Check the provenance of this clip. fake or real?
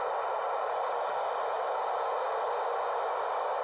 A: real